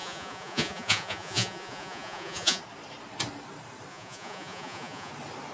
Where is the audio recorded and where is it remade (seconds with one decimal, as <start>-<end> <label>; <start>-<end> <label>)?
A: 0.0-2.6 remade; 2.6-3.9 recorded; 3.9-5.1 remade; 5.1-5.5 recorded